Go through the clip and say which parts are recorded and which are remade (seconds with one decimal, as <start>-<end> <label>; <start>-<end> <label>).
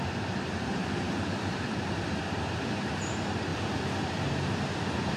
0.0-3.5 remade; 3.5-4.0 recorded; 4.0-5.2 remade